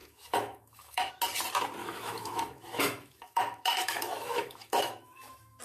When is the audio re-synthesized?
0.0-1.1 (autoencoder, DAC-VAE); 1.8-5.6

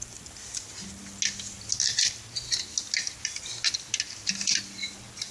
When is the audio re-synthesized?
none

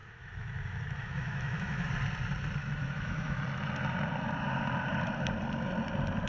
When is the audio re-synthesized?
0.0-1.9 (autoencoder, DAC-VAE); 2.6-3.4